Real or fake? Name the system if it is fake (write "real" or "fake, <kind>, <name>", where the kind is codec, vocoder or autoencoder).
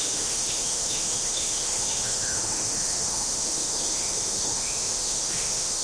fake, autoencoder, DAC-VAE